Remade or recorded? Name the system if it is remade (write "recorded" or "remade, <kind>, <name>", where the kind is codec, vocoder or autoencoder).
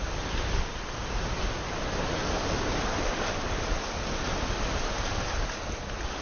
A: recorded